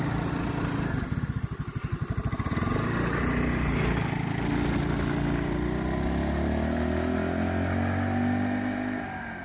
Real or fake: real